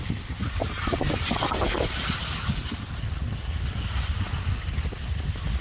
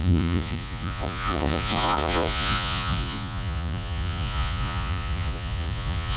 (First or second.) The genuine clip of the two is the first